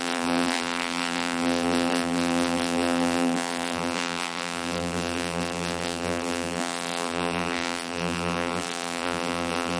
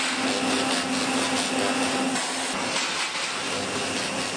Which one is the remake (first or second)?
first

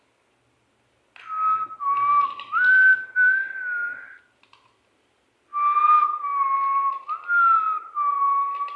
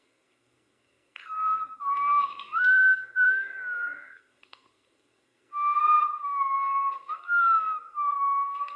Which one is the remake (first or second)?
second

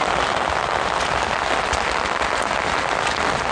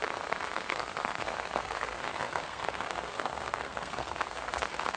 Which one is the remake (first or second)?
second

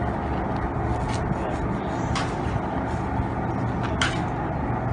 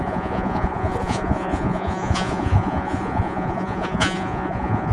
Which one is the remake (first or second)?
second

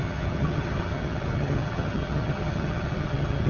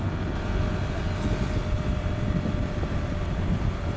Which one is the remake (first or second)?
first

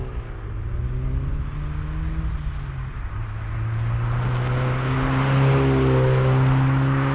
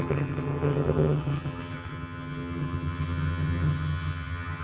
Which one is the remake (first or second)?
second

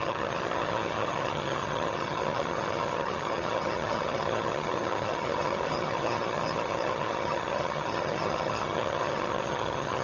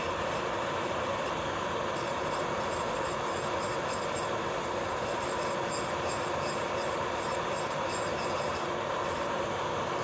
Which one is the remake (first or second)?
first